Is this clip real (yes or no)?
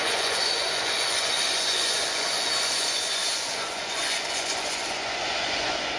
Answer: no